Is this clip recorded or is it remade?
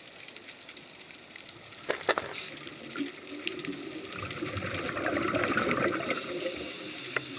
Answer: recorded